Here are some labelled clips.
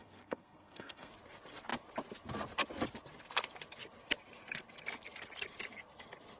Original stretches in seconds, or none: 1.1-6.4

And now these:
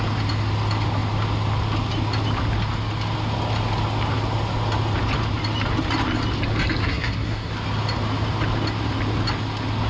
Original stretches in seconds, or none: 0.0-6.8; 7.5-9.9

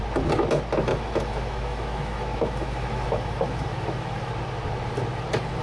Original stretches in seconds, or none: 0.0-0.9; 4.3-5.6

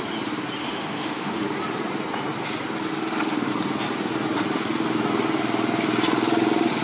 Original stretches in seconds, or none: 0.0-0.6; 1.4-2.9; 3.5-6.8

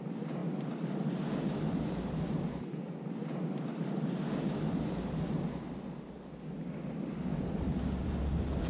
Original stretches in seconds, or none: 0.0-8.7

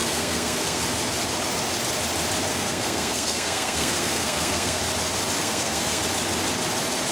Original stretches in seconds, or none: 0.8-2.5; 4.8-5.4; 6.0-7.1